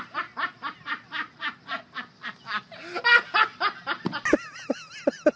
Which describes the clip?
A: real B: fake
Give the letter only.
A